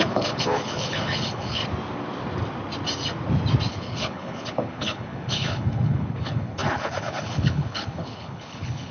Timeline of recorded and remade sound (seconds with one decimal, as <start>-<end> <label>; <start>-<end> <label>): 0.0-1.6 remade; 1.6-3.7 recorded; 3.7-8.9 remade